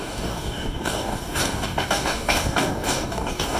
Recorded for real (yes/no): no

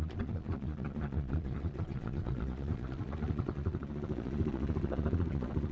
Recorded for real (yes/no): no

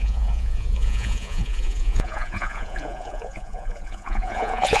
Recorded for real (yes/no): no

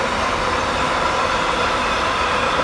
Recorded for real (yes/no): yes